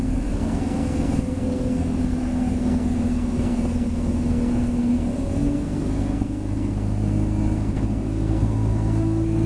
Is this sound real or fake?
fake